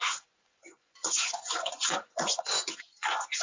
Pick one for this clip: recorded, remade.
remade